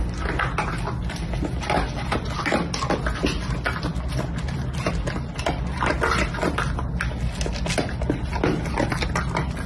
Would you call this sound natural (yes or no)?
yes